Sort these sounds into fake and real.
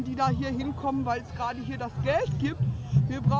real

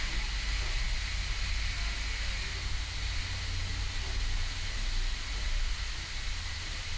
real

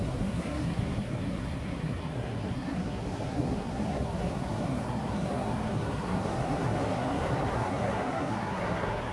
fake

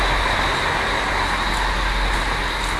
real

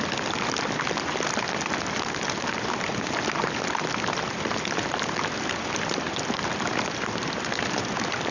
fake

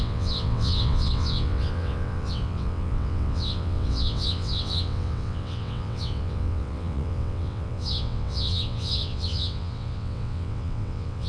fake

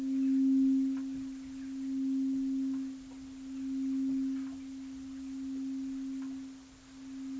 real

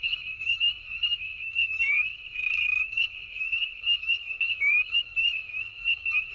fake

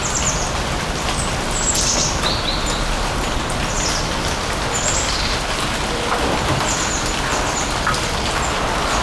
real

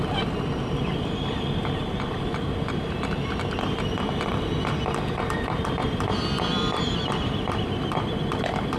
fake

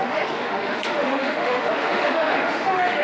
fake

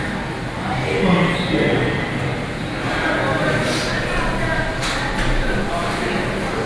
real